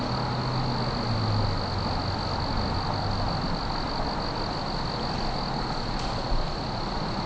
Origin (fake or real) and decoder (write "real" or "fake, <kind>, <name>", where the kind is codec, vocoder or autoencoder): real